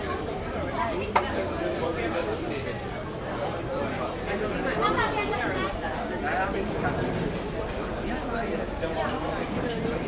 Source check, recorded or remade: recorded